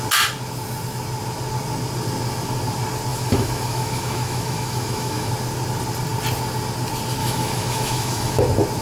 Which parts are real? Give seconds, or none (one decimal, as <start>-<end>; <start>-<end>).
0.0-3.1; 5.3-7.2; 8.4-8.8